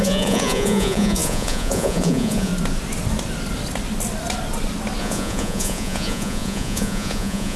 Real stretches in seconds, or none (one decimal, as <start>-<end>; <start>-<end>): 2.5-5.0